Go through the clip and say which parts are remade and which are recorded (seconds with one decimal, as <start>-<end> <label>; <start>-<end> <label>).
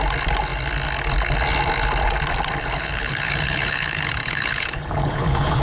0.0-2.6 recorded; 2.6-5.6 remade